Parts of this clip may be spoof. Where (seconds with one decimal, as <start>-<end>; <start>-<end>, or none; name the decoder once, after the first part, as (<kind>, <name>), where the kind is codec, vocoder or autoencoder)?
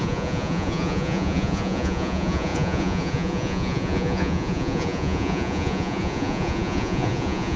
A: 0.0-7.6 (vocoder, Vocos)